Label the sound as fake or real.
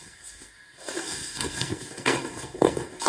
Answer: fake